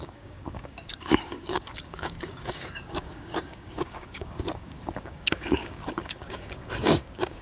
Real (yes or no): no